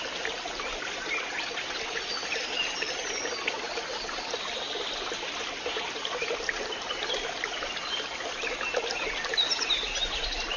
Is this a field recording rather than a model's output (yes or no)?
yes